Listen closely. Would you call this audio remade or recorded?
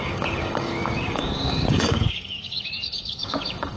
remade